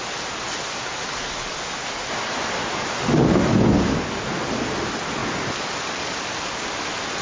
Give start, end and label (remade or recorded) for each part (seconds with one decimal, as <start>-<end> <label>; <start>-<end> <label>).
0.0-7.2 recorded